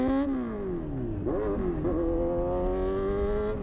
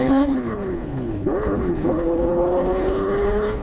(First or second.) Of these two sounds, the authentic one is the first